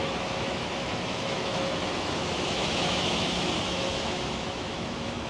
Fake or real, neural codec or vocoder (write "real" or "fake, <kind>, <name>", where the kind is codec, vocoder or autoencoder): fake, autoencoder, DAC-VAE